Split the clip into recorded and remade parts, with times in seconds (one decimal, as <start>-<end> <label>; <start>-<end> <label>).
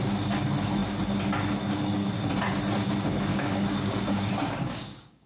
0.0-3.3 recorded; 3.3-5.3 remade